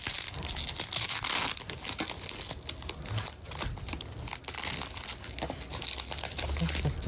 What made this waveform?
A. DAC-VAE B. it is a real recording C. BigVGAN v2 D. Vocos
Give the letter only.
B